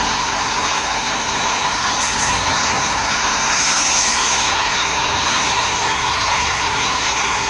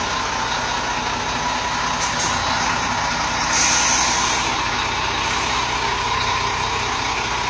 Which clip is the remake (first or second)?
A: first